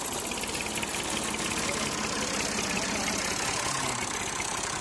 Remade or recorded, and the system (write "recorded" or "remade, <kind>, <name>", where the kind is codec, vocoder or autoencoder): recorded